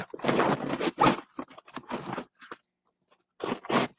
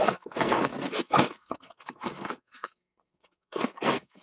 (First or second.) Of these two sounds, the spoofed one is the second